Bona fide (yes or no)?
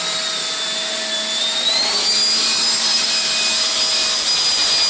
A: yes